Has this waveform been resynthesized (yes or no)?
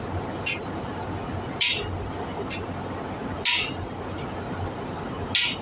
no